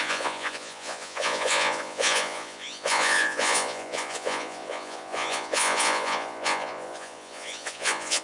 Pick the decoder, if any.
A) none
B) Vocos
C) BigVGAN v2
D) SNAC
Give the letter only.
B